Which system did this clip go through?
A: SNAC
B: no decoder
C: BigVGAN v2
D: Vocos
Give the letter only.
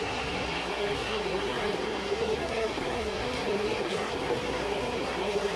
A